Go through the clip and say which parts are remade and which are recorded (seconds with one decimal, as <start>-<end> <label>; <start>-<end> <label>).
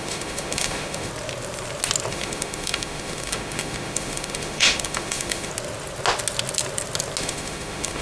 0.0-1.1 remade; 1.1-2.1 recorded; 2.1-5.5 remade; 5.5-7.2 recorded; 7.2-8.0 remade